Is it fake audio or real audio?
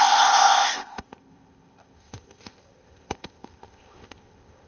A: fake